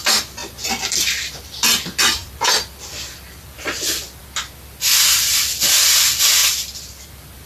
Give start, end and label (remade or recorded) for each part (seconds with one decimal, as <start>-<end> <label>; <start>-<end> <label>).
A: 0.0-0.4 recorded; 0.4-1.7 remade; 1.7-6.4 recorded; 6.4-7.1 remade; 7.1-7.5 recorded